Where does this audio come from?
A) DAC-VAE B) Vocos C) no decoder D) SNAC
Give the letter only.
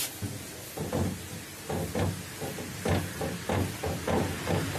C